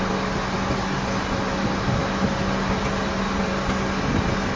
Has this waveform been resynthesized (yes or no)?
no